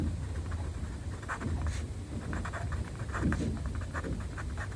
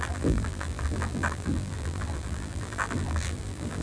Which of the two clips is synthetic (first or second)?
second